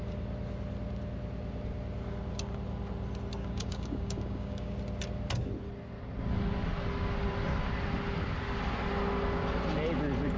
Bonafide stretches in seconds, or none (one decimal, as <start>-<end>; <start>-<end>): 0.0-3.4; 4.7-10.4